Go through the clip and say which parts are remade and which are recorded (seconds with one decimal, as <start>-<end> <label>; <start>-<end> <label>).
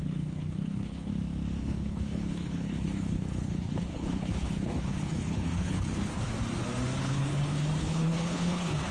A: 0.0-1.1 remade; 1.1-1.6 recorded; 1.6-6.3 remade; 6.3-7.0 recorded; 7.0-8.9 remade